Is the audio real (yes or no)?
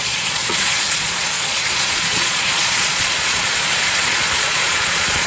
no